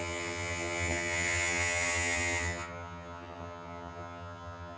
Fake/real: fake